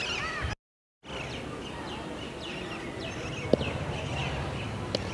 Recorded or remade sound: recorded